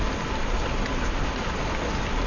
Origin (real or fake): real